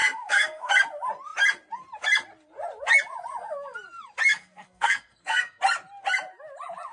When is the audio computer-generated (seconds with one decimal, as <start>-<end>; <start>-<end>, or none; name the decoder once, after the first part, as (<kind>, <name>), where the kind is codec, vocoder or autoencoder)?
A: 0.0-0.7 (codec, SNAC); 4.3-5.6